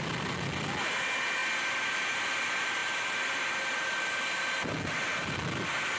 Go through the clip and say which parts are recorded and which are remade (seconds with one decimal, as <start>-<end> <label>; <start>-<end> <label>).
0.0-6.0 recorded